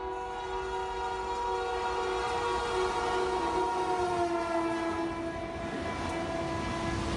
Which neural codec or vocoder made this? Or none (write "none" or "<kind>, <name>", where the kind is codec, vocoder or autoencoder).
none